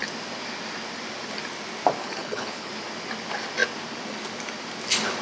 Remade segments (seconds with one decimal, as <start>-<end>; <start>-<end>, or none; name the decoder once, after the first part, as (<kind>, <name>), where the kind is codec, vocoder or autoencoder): 2.0-2.7 (codec, HILCodec)